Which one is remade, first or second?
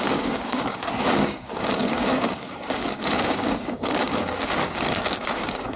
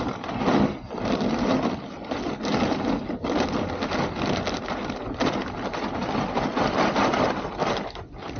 first